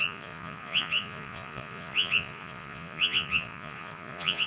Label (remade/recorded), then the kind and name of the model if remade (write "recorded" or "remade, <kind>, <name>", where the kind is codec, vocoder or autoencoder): remade, vocoder, Vocos